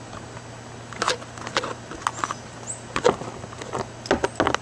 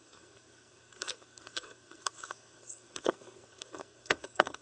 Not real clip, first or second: second